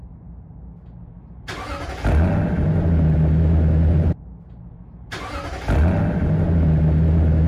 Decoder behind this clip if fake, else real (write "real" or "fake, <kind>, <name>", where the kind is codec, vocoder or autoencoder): real